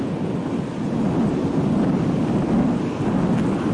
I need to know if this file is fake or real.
real